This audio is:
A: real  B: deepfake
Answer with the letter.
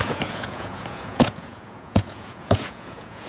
B